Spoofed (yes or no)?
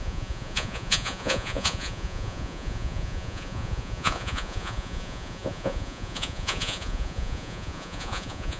yes